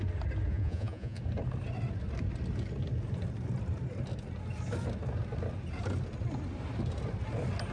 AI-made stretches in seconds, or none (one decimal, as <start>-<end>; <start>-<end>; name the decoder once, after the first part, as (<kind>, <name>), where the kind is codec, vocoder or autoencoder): 0.5-1.2 (vocoder, Vocos)